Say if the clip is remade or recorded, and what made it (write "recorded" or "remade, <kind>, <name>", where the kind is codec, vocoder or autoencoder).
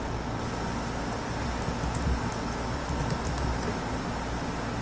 recorded